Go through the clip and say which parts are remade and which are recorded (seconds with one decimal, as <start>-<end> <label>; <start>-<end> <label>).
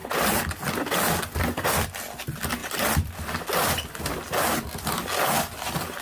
0.0-6.0 recorded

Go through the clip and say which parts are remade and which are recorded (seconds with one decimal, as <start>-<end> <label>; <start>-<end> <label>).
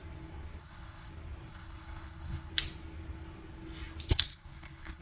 0.0-0.6 recorded; 0.6-1.1 remade; 1.1-1.5 recorded; 1.5-2.5 remade; 2.5-4.1 recorded; 4.1-5.0 remade